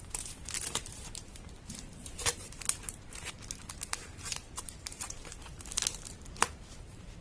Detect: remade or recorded remade